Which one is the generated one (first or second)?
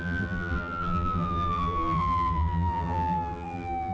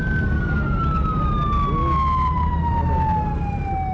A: first